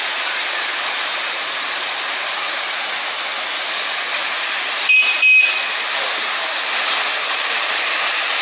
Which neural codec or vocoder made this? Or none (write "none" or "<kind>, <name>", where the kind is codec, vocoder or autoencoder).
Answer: vocoder, BigVGAN v2